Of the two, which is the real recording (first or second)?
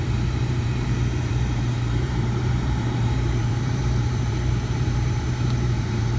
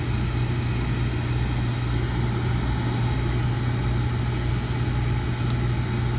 second